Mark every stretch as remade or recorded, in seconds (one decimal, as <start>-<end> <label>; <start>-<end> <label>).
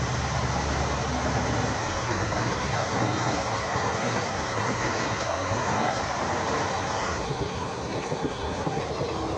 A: 0.0-1.8 recorded; 1.8-6.0 remade; 6.0-6.7 recorded; 6.7-8.8 remade; 8.8-9.4 recorded